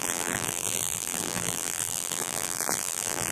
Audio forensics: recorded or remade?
remade